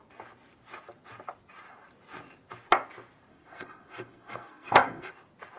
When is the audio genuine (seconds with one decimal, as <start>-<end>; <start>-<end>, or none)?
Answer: 0.0-3.3; 5.1-5.6